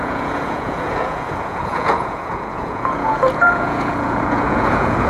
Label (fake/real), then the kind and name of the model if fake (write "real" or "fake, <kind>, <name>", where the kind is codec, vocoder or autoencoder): fake, vocoder, Vocos